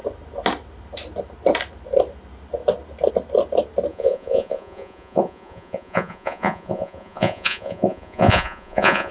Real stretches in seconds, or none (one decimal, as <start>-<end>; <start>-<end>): 0.0-3.9